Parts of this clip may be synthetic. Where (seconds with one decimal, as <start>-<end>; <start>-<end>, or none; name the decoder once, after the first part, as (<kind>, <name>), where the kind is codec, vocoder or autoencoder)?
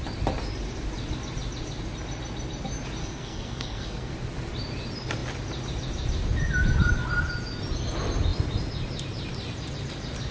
3.0-4.1 (codec, SNAC)